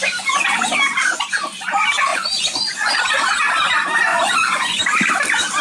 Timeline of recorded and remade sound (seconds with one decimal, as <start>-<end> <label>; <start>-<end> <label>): 0.0-2.1 recorded; 2.1-2.9 remade; 2.9-4.1 recorded; 4.1-4.8 remade; 4.8-5.6 recorded

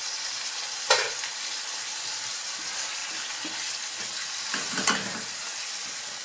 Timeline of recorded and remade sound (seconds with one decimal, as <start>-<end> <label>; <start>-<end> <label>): 0.0-6.2 recorded

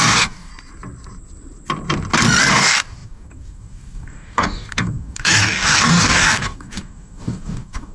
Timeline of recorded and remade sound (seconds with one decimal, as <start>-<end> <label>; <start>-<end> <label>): 0.0-0.5 remade; 0.5-2.5 recorded; 2.5-7.9 remade

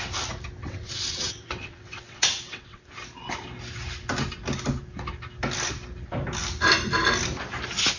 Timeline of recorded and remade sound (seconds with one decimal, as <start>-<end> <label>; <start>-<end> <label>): 0.0-0.6 recorded; 0.6-2.8 remade; 2.8-8.0 recorded

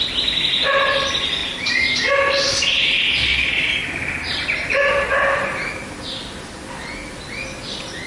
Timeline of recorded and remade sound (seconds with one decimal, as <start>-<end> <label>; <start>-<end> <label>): 0.0-8.1 recorded